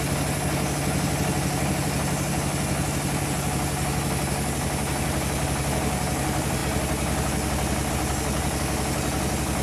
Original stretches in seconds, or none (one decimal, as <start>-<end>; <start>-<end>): 0.0-9.6